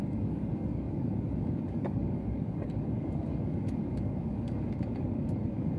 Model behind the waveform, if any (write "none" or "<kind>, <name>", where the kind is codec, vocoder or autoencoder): codec, DAC